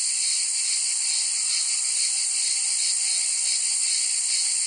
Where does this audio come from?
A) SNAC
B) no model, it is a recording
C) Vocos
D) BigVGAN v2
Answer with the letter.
B